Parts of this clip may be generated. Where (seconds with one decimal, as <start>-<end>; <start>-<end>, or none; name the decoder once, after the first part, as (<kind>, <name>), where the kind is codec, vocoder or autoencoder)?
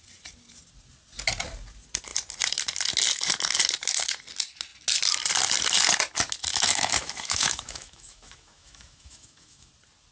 6.5-9.7 (autoencoder, DAC-VAE)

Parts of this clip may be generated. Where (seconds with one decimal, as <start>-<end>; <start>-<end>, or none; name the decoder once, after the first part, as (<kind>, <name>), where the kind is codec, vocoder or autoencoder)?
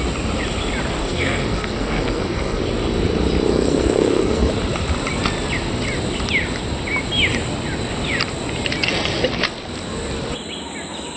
1.0-2.6 (codec, SNAC); 3.5-4.5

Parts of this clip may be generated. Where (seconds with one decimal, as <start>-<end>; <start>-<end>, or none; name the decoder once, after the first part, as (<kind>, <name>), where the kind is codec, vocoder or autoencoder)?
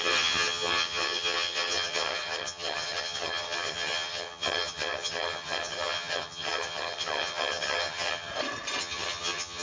0.0-8.3 (vocoder, HiFi-GAN); 8.8-9.6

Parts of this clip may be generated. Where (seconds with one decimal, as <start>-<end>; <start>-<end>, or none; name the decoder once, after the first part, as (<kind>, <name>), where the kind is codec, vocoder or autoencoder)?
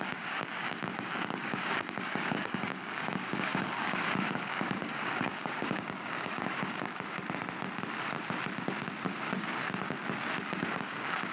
0.0-7.2 (codec, DAC); 9.1-9.6; 10.5-11.3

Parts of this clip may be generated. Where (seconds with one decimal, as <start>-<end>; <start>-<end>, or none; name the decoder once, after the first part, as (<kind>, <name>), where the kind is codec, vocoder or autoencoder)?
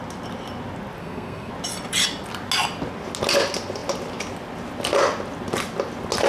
1.0-1.5 (codec, SNAC)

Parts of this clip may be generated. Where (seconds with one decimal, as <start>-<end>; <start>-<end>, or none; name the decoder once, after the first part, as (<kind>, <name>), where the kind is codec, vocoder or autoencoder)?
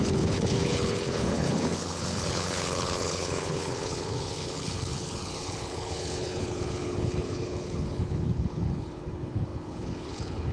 0.0-10.5 (codec, HILCodec)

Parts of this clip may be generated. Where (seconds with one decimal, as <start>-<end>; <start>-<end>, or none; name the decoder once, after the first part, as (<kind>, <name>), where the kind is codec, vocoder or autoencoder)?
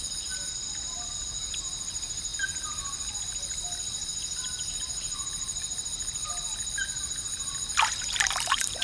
none